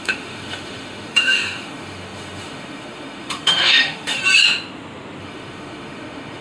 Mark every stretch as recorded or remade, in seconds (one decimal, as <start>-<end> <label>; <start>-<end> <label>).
0.0-4.2 remade; 4.2-5.2 recorded; 5.2-6.4 remade